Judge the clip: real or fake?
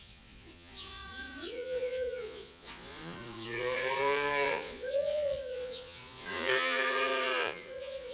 fake